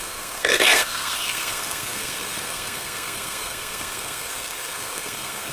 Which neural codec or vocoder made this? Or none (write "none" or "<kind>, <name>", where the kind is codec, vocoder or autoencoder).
codec, SNAC